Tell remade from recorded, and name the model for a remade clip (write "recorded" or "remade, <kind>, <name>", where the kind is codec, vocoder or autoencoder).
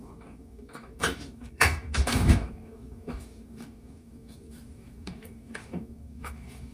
remade, codec, DAC